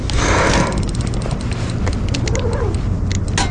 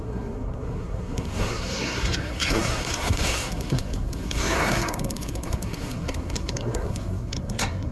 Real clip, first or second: first